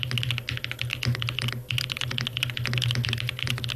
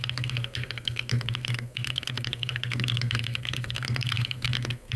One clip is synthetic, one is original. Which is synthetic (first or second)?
second